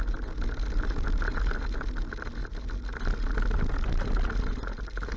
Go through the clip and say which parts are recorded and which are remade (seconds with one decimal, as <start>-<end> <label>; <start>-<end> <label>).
0.0-5.2 recorded